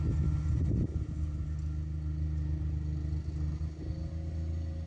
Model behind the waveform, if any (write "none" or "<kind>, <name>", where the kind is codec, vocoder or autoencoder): none